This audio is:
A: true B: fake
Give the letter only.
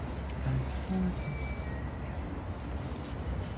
A